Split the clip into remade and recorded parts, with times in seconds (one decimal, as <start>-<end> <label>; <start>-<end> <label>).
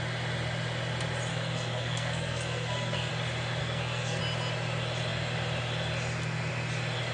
0.0-1.3 recorded; 1.3-3.1 remade; 3.1-3.6 recorded; 3.6-4.2 remade; 4.2-7.1 recorded